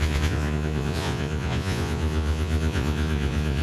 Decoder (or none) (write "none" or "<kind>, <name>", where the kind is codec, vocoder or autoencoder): vocoder, Vocos